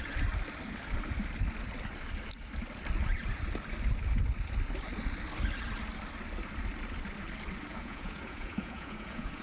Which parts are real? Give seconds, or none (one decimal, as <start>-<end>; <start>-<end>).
0.0-7.7